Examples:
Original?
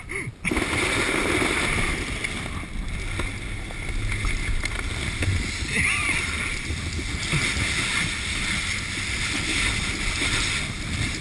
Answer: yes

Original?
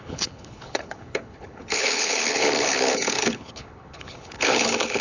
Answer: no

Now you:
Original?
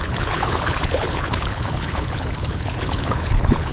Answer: no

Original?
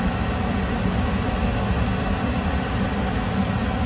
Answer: yes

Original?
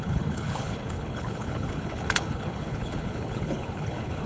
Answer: no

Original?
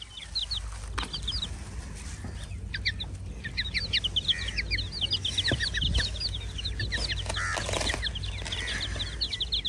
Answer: yes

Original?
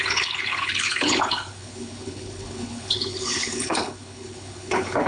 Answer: no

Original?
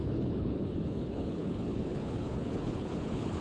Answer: no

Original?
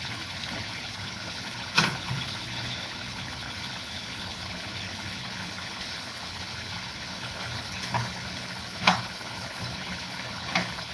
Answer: no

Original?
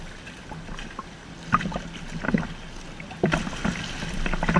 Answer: yes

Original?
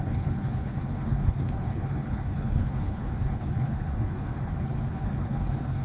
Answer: no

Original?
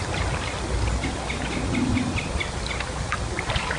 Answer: yes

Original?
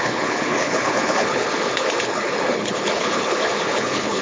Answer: no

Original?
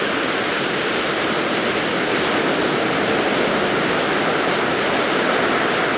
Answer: yes